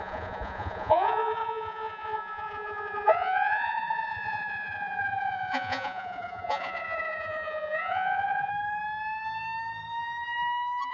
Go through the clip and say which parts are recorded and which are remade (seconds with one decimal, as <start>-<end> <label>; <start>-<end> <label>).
0.0-8.5 remade; 8.5-10.9 recorded